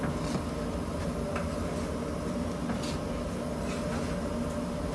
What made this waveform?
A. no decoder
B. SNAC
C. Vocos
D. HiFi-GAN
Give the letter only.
A